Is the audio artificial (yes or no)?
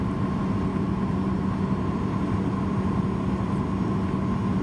no